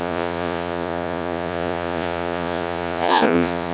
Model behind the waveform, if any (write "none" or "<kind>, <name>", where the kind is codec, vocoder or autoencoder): vocoder, Vocos